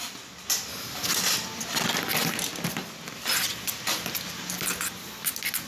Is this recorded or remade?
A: recorded